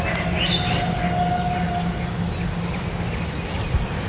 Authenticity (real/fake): real